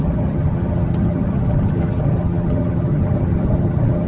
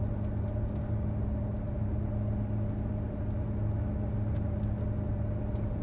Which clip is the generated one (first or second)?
first